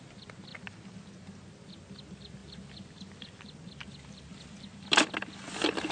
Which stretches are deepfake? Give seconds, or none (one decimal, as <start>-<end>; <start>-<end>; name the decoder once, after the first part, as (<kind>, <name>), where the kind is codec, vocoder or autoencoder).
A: none

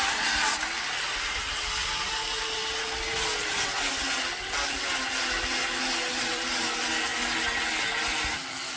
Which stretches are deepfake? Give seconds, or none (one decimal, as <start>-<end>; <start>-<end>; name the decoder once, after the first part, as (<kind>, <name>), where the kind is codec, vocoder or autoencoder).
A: none

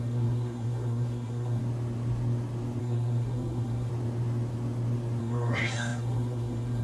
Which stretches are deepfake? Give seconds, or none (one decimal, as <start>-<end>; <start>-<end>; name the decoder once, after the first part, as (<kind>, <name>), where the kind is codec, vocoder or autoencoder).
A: 0.0-1.6 (codec, SNAC); 2.8-3.9; 5.2-6.8

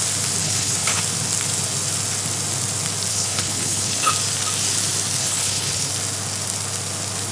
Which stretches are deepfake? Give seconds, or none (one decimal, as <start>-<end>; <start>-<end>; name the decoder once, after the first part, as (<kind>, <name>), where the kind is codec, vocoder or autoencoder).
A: 0.4-1.0 (codec, HILCodec); 3.1-4.1; 5.2-5.9

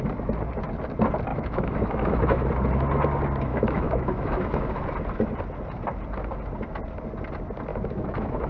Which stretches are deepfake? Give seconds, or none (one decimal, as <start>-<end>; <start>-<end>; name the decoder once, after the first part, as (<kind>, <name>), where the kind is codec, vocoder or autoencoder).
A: 1.3-2.5 (autoencoder, DAC-VAE); 3.5-4.8; 7.7-8.5